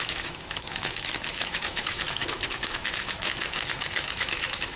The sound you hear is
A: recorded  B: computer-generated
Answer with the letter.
B